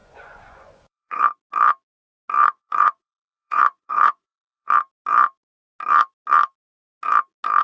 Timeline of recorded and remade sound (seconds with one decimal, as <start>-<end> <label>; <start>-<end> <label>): 0.0-1.2 remade; 1.2-2.4 recorded; 2.4-4.7 remade; 4.7-7.6 recorded